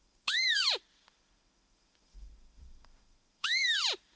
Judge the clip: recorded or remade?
remade